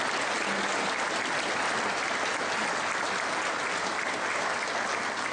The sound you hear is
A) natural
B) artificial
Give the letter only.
A